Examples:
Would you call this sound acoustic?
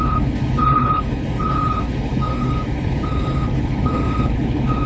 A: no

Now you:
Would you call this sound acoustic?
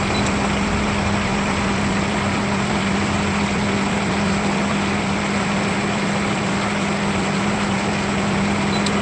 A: yes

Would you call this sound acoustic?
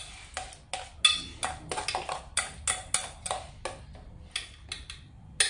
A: yes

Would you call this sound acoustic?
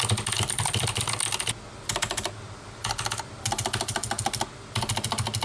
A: yes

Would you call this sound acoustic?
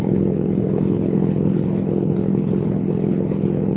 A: no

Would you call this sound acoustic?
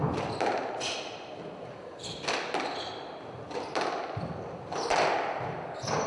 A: yes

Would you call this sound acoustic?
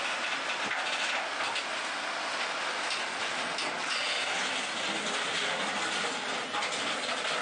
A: yes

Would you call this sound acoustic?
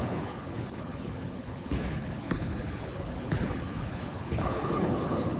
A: no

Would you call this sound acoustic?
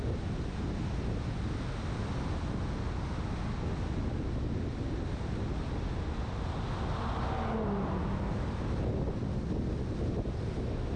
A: yes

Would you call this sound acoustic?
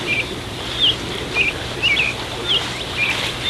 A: yes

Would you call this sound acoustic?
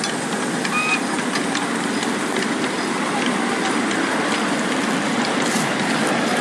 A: yes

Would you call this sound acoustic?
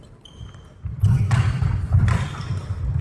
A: yes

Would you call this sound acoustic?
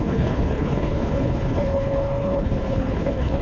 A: no